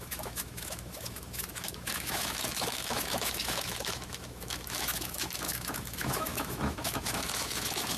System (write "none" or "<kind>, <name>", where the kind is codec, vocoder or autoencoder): autoencoder, DAC-VAE